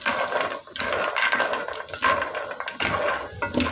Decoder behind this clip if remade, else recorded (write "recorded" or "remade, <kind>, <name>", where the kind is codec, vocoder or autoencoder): recorded